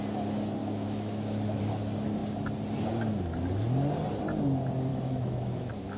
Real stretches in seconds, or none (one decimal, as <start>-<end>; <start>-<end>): 0.0-0.6; 1.6-4.9